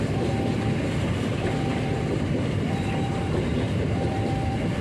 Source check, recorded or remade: remade